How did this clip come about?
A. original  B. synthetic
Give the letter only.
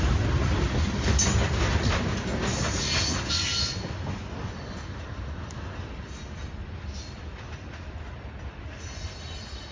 A